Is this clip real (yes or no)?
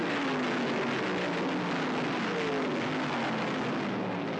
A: yes